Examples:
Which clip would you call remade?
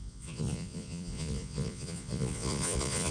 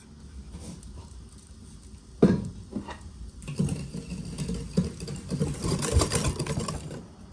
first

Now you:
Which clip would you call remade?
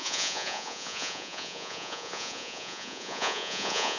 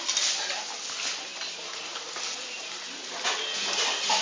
first